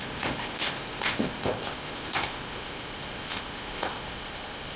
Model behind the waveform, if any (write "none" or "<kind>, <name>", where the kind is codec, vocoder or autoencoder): codec, ZipCodec